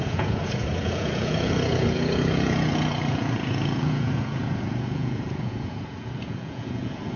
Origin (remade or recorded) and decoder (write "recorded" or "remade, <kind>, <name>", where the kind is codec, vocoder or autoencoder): remade, vocoder, Vocos